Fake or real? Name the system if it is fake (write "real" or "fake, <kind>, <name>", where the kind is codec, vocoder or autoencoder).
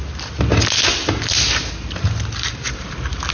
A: real